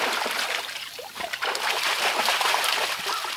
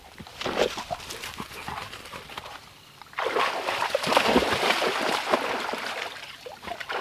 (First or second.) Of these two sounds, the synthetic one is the second